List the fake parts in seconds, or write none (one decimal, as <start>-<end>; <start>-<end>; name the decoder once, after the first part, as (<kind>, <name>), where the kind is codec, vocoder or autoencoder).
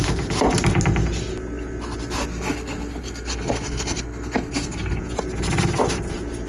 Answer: 2.3-5.0 (codec, SNAC)